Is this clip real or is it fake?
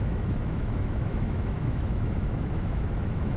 fake